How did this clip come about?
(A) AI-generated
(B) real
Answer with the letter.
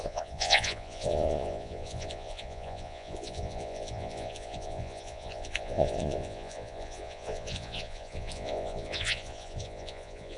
A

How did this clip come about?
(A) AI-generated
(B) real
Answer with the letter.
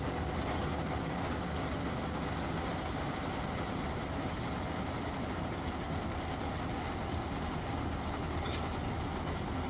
B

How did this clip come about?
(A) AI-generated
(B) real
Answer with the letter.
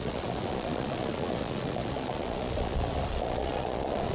A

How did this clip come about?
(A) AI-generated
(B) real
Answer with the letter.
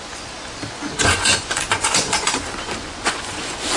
A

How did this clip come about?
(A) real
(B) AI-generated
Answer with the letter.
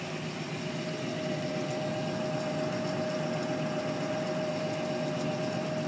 A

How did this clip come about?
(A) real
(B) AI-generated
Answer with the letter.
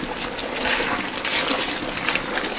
A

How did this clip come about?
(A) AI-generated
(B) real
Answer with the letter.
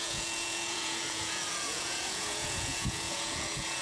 A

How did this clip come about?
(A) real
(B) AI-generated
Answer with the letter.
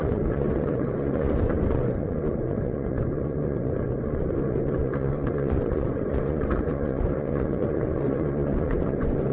B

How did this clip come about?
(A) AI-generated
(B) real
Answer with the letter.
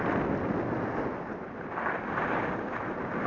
B